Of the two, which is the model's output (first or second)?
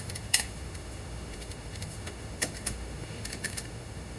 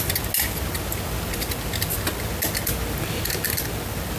first